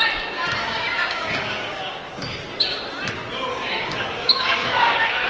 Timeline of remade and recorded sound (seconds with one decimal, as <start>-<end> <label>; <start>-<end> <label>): 0.0-0.6 recorded; 0.6-2.4 remade; 2.4-3.5 recorded; 3.5-5.3 remade